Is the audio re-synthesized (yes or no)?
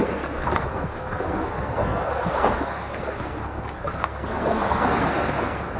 yes